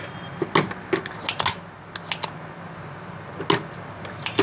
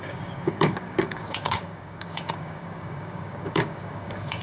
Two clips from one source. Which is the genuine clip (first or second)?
first